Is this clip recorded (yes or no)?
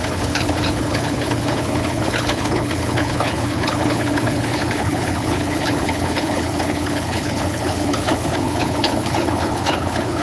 no